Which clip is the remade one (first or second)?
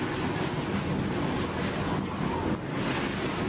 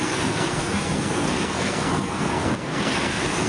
second